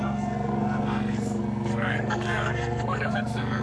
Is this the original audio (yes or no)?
no